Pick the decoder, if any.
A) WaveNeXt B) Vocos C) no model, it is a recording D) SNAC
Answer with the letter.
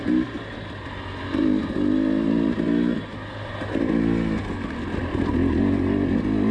C